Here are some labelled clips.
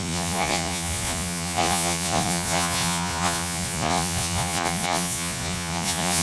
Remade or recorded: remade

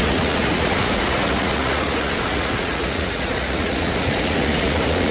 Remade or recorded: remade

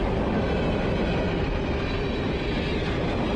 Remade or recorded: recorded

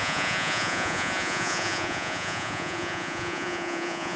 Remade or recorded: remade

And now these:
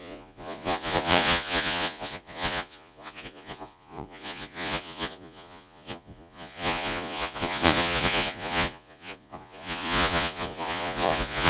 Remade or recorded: remade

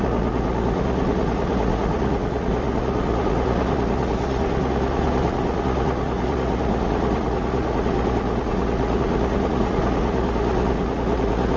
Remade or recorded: remade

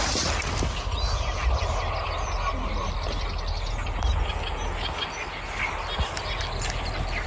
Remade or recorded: recorded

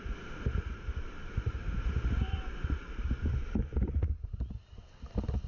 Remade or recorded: recorded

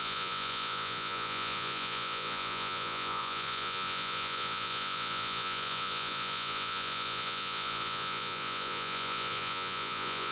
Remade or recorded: remade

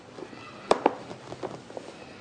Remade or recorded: recorded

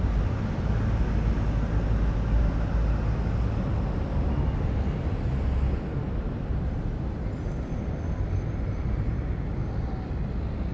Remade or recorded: recorded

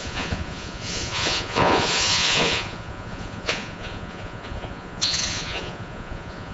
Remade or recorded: remade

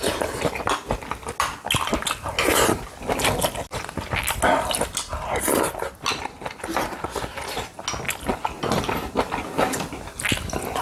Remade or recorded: recorded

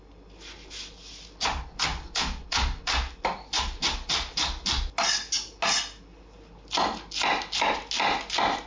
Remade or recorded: recorded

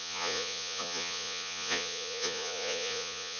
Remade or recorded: remade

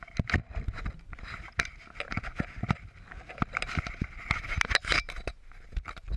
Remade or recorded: recorded